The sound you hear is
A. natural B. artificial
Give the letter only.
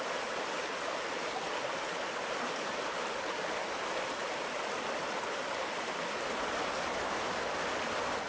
A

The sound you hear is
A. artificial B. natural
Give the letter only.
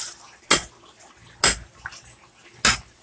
B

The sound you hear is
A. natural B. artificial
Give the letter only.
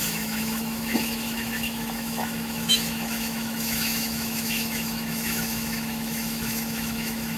B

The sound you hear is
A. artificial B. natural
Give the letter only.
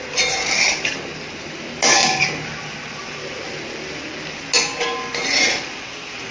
B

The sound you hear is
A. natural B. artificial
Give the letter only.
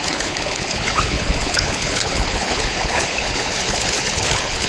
B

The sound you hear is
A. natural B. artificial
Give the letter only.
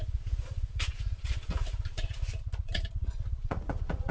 B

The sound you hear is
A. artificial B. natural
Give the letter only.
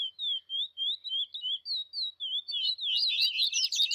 B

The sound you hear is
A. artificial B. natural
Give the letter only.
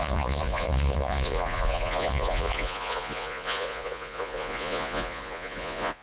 A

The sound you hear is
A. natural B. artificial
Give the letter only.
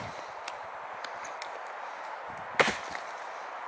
A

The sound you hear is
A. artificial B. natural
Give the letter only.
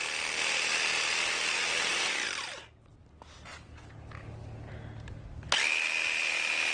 B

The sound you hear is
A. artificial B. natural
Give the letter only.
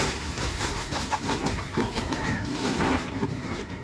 A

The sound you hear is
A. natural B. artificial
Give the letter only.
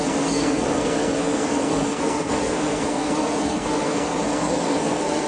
B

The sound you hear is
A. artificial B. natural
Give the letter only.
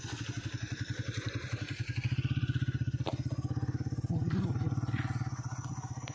B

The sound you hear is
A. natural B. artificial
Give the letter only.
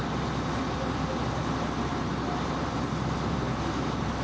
A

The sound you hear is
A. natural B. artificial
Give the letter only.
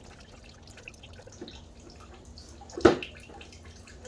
A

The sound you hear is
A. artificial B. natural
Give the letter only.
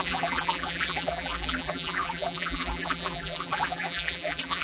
A